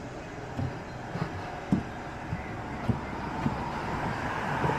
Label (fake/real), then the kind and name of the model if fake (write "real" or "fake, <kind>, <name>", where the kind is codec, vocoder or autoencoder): real